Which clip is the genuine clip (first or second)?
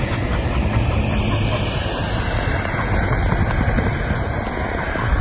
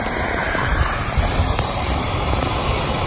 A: first